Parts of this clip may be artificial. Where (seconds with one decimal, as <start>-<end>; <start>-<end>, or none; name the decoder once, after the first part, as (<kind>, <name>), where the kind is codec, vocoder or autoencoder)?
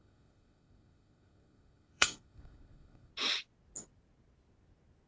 0.0-3.1 (codec, SNAC)